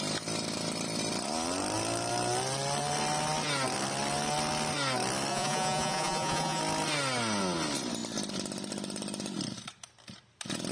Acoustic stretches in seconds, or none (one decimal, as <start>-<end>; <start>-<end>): 0.0-5.3; 6.6-10.7